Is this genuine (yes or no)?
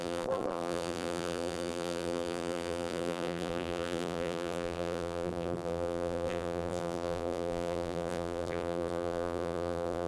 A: no